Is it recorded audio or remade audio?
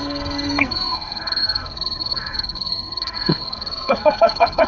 remade